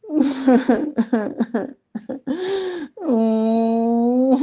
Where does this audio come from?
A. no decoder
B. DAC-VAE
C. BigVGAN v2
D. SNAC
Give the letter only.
A